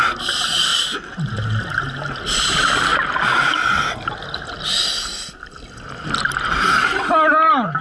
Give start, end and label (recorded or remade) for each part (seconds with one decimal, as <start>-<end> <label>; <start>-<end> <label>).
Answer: 0.0-7.8 recorded